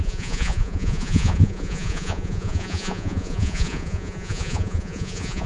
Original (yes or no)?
no